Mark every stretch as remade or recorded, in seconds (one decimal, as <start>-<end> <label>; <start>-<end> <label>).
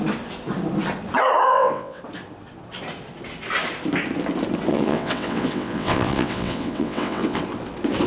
0.0-1.4 recorded; 1.4-2.0 remade; 2.0-4.7 recorded; 4.7-7.4 remade; 7.4-8.1 recorded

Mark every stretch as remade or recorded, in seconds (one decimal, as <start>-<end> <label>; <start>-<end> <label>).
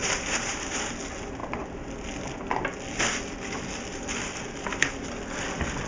0.0-0.9 remade; 0.9-5.9 recorded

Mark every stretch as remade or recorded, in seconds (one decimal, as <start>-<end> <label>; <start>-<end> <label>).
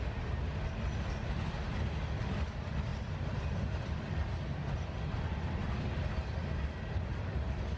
0.0-7.8 recorded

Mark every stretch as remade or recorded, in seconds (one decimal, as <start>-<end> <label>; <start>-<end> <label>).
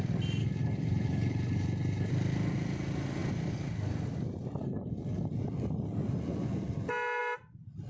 0.0-0.4 recorded; 0.4-2.1 remade; 2.1-4.6 recorded; 4.6-5.3 remade; 5.3-7.9 recorded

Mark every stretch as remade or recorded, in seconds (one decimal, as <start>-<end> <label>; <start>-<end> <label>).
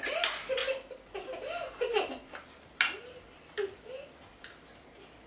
0.0-5.3 recorded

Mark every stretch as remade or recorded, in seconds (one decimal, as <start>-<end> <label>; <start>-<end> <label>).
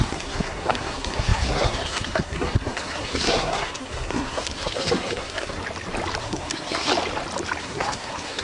0.0-5.6 remade; 5.6-6.2 recorded; 6.2-6.9 remade; 6.9-7.6 recorded; 7.6-8.4 remade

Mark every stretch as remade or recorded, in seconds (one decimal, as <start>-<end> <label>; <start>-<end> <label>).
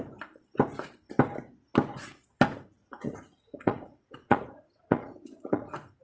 0.0-2.8 recorded; 2.8-6.0 remade